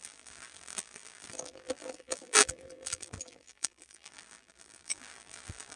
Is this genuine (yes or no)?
no